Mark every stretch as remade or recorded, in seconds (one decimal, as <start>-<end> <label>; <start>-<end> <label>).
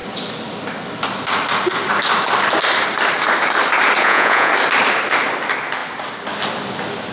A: 0.0-4.0 recorded; 4.0-4.5 remade; 4.5-7.1 recorded